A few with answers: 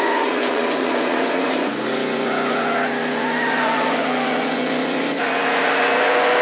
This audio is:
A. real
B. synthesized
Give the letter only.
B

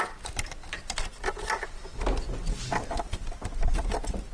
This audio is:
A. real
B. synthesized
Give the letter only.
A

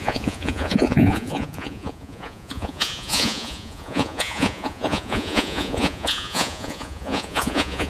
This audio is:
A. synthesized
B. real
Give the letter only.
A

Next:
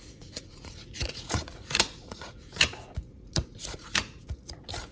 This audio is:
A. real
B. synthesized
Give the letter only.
B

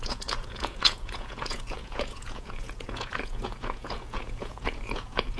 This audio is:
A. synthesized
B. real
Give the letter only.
A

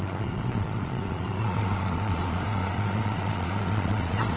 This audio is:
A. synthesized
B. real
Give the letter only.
A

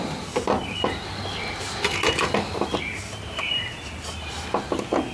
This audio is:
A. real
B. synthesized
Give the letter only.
A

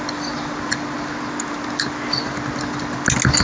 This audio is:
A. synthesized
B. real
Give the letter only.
B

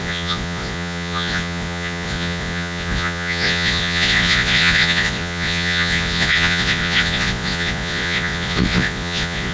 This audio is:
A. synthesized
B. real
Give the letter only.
A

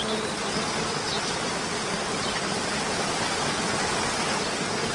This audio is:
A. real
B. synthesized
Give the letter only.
A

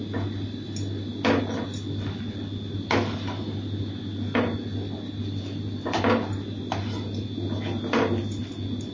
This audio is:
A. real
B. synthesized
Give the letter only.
A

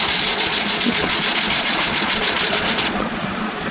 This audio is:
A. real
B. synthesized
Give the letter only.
B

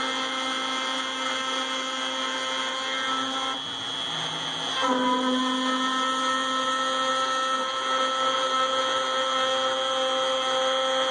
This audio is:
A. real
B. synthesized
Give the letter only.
A